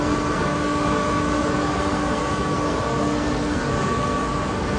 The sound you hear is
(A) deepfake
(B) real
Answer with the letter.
A